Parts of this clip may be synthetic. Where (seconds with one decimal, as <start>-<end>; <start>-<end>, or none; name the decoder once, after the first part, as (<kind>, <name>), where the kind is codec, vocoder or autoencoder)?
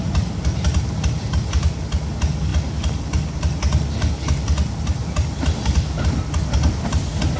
none